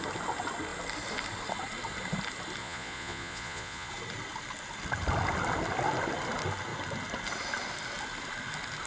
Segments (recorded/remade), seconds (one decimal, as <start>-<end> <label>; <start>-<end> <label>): 0.0-2.6 recorded; 2.6-3.9 remade; 3.9-8.9 recorded